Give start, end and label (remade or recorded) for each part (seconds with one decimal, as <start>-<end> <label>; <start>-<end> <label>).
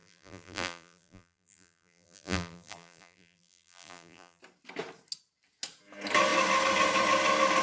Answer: 0.0-4.4 remade; 4.4-7.6 recorded